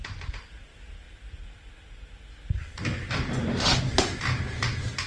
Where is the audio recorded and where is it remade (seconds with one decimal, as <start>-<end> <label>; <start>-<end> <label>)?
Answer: 0.0-5.1 recorded